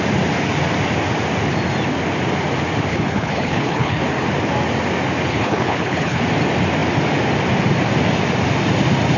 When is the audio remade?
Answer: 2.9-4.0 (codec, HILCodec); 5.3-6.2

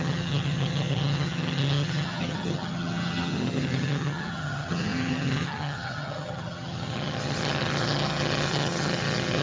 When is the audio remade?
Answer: 0.0-9.4 (vocoder, HiFi-GAN)

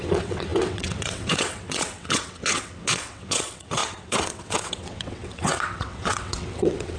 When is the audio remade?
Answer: 0.0-7.0 (vocoder, WaveNeXt)